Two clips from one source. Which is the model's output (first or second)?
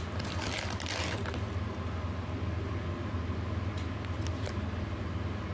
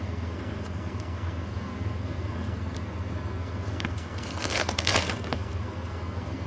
second